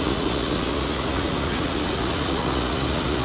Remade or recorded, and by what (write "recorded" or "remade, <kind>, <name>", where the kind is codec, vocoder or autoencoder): remade, vocoder, Vocos